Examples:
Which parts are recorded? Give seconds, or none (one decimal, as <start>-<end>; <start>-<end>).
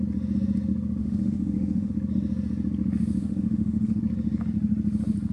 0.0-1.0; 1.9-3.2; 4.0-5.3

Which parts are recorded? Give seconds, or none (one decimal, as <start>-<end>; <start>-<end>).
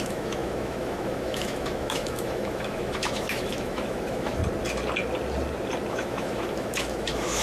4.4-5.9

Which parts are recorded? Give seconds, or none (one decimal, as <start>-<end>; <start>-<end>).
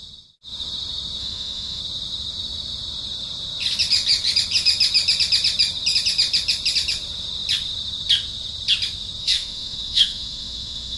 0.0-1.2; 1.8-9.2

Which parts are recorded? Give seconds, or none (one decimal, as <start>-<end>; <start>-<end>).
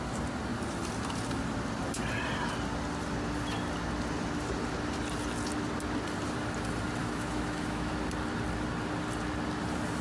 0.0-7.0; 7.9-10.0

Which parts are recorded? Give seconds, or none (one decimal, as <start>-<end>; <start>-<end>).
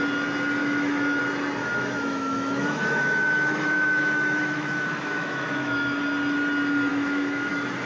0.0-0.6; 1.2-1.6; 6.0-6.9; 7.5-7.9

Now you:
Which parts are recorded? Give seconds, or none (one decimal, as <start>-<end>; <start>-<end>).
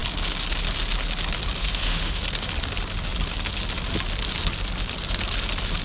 0.0-1.6; 2.2-5.8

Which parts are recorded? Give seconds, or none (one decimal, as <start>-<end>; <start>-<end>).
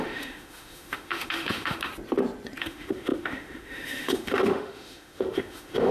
1.9-2.6